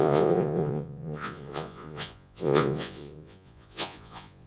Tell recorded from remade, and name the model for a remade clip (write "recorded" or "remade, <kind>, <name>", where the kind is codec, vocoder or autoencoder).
remade, vocoder, Vocos